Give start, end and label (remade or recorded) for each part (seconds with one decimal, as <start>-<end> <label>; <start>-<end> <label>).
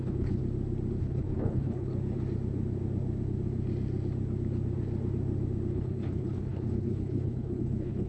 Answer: 0.0-0.4 remade; 0.4-1.0 recorded; 1.0-1.9 remade; 1.9-5.7 recorded; 5.7-8.1 remade